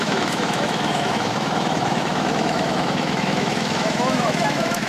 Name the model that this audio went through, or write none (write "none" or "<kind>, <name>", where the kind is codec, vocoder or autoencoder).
autoencoder, DAC-VAE